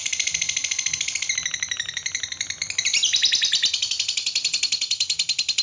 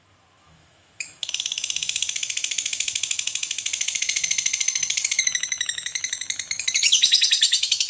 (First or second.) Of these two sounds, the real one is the first